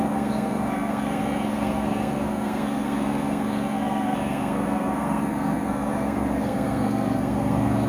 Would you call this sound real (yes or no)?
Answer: no